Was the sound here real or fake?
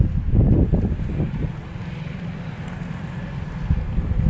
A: real